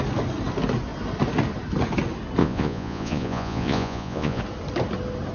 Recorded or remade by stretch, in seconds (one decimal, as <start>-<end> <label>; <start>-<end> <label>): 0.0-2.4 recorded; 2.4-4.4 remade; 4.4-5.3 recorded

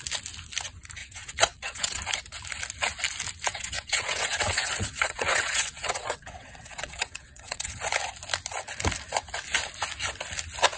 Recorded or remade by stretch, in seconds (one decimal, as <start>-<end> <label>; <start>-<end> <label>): 0.0-1.0 recorded; 1.0-2.0 remade; 2.0-3.5 recorded; 3.5-7.8 remade; 7.8-10.8 recorded

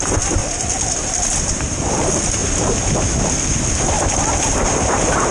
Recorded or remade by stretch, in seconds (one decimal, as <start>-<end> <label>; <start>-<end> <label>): 0.0-0.4 recorded; 0.4-2.0 remade; 2.0-2.4 recorded; 2.4-5.3 remade

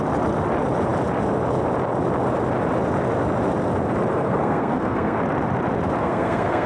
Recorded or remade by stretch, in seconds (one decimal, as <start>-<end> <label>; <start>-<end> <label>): 0.0-4.1 recorded; 4.1-5.2 remade; 5.2-6.0 recorded; 6.0-6.7 remade

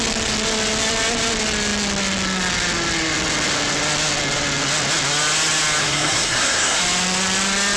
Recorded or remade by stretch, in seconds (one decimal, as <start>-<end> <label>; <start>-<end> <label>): 0.0-5.8 recorded; 5.8-6.8 remade; 6.8-7.8 recorded